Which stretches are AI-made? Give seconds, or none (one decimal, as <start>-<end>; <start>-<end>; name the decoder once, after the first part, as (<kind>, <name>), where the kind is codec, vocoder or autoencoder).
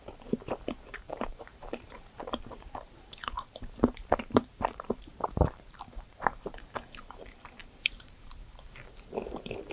0.0-9.7 (vocoder, BigVGAN v2)